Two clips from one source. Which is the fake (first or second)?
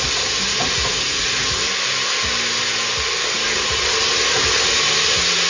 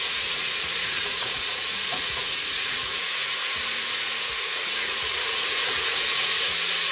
second